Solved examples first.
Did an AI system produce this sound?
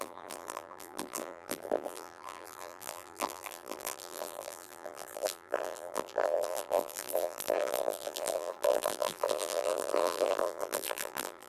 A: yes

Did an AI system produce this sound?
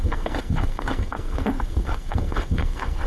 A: yes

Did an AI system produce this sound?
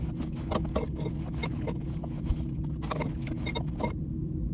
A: no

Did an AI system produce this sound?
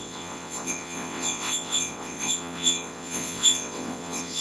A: yes